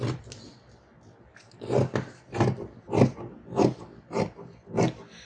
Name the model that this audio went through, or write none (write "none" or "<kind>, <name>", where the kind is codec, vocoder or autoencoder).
none